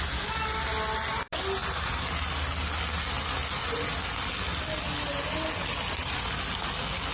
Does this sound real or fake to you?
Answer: real